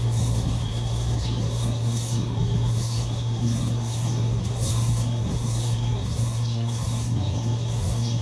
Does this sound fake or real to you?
fake